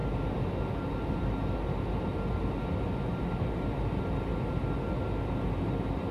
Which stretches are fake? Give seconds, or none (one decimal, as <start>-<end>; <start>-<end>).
none